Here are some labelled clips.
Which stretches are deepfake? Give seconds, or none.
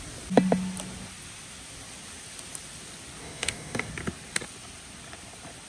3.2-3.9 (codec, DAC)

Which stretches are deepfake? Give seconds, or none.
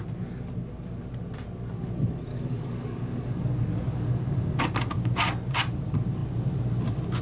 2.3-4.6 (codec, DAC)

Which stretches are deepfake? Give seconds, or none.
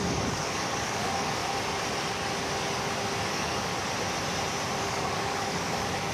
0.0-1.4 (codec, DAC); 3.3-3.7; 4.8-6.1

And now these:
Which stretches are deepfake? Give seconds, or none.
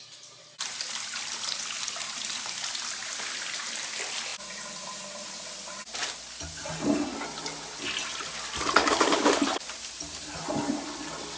8.8-9.4 (codec, DAC)